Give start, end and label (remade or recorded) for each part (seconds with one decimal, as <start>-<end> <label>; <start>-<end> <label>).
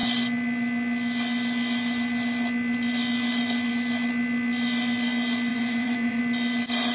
0.0-5.5 recorded; 5.5-6.2 remade; 6.2-6.9 recorded